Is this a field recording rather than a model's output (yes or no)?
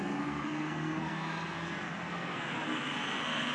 no